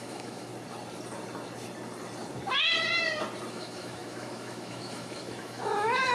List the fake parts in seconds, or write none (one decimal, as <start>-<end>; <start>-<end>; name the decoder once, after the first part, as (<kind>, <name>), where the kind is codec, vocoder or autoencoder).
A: 0.0-0.5 (autoencoder, DAC-VAE); 3.5-6.1